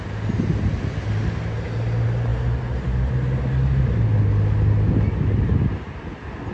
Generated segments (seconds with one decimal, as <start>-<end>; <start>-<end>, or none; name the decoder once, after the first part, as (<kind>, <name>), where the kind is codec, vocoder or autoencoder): none